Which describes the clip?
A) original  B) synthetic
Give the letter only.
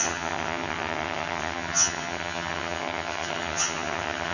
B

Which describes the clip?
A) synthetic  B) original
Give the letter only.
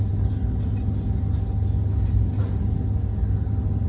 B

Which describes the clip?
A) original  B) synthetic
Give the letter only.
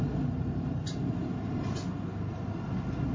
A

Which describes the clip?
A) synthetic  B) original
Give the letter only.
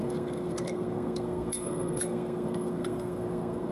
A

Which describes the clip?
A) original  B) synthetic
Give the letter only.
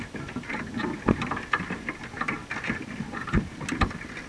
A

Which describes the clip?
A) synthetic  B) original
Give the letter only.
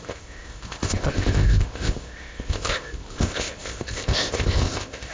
A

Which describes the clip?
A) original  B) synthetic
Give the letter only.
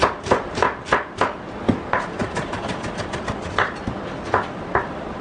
A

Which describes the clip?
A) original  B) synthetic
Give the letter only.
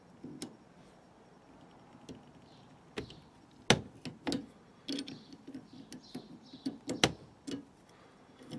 A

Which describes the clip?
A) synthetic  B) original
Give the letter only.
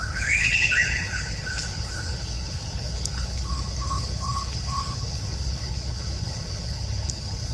A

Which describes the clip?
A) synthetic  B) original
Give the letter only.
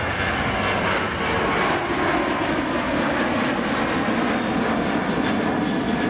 B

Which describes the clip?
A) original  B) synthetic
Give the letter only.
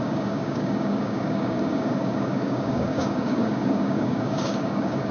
B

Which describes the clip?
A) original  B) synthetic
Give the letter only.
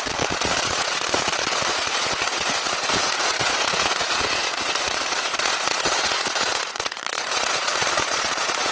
B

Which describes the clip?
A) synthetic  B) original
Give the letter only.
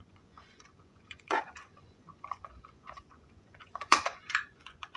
A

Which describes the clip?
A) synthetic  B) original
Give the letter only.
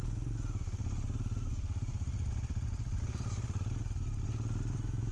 B